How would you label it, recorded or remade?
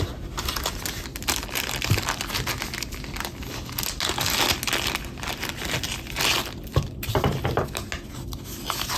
recorded